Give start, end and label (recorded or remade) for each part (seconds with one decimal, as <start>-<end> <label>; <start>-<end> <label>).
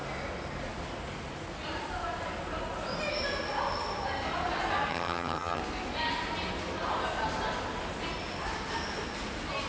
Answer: 0.0-4.9 recorded; 4.9-5.6 remade; 5.6-9.7 recorded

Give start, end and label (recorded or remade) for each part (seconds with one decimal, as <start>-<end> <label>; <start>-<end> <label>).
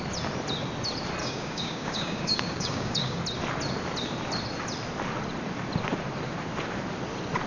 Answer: 0.0-1.2 recorded; 1.2-3.2 remade; 3.2-7.5 recorded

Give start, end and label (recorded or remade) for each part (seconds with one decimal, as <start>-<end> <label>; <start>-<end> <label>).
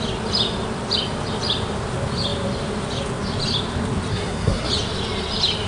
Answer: 0.0-4.1 recorded; 4.1-4.7 remade; 4.7-5.7 recorded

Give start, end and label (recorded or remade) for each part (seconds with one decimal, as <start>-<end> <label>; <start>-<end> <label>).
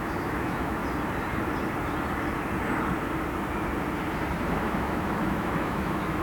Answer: 0.0-0.8 remade; 0.8-4.5 recorded; 4.5-6.2 remade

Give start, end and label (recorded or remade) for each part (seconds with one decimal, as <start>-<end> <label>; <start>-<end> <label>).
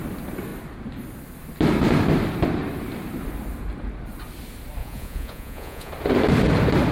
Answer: 0.0-4.8 recorded; 4.8-5.9 remade; 5.9-6.9 recorded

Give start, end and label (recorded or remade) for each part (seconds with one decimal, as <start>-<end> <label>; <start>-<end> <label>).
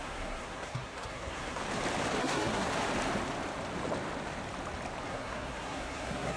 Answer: 0.0-1.6 remade; 1.6-2.2 recorded; 2.2-2.7 remade; 2.7-5.1 recorded; 5.1-6.4 remade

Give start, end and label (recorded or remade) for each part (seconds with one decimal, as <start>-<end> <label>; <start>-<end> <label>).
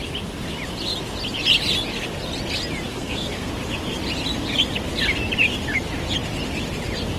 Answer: 0.0-2.9 recorded; 2.9-3.5 remade; 3.5-7.2 recorded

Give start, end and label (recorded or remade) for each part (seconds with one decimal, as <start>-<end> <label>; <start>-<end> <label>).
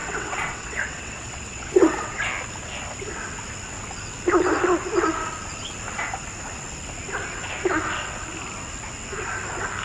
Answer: 0.0-2.2 remade; 2.2-9.8 recorded